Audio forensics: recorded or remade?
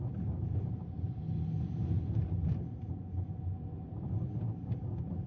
recorded